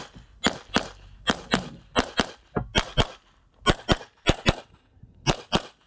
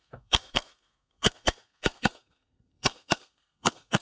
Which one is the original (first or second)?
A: first